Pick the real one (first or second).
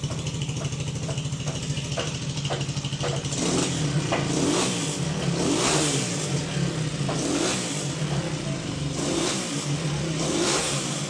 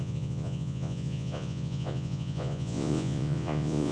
first